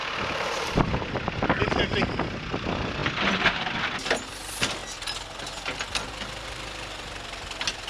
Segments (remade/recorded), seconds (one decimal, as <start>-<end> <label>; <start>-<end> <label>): 0.0-7.9 recorded